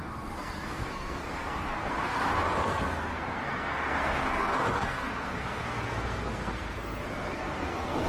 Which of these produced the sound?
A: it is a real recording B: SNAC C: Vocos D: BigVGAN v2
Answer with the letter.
B